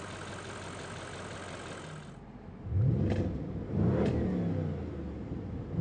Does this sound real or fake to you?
real